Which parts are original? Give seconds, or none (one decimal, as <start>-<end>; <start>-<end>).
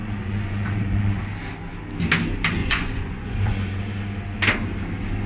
1.2-2.6; 3.8-5.3